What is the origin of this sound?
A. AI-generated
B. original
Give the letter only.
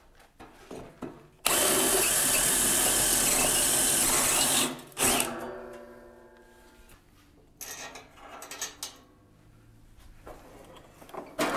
B